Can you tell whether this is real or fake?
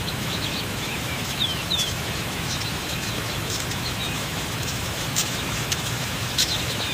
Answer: fake